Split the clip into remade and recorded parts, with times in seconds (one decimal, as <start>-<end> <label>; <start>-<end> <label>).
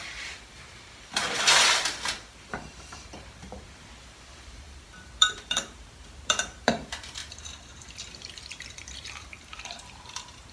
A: 0.0-7.2 remade; 7.2-7.9 recorded; 7.9-10.5 remade